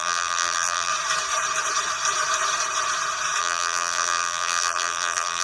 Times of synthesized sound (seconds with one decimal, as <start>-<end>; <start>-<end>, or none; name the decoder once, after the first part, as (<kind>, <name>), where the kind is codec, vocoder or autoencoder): 0.0-0.9 (vocoder, BigVGAN v2); 3.4-5.4